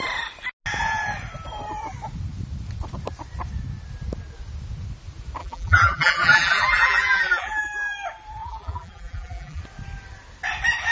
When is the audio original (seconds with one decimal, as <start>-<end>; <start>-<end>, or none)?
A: 0.0-5.4; 7.6-8.4; 9.6-10.9